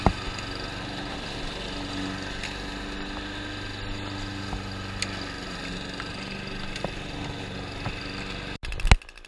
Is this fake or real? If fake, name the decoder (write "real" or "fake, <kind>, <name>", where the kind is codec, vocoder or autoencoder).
real